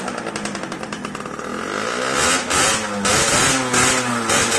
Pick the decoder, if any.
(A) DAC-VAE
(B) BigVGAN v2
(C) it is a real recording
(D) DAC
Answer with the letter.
C